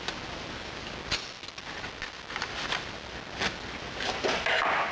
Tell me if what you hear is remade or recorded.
recorded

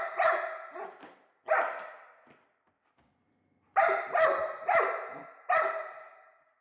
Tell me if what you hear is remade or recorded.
recorded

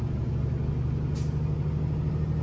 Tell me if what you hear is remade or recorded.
recorded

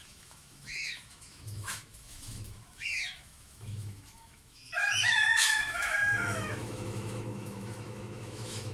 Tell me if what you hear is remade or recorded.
remade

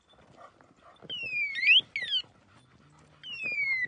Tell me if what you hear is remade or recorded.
recorded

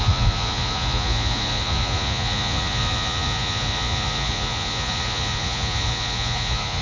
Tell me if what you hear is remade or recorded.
remade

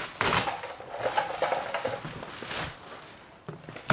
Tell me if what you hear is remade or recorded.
recorded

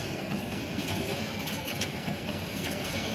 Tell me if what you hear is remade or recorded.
remade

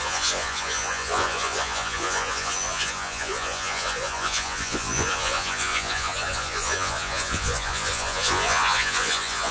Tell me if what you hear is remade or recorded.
remade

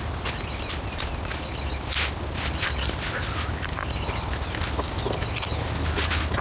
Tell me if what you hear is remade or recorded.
recorded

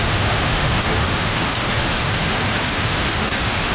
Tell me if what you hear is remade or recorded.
remade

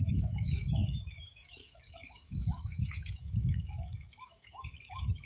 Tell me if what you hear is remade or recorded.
remade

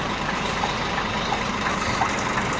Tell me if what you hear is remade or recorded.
remade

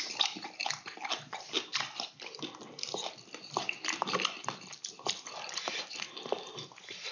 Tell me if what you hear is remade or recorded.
recorded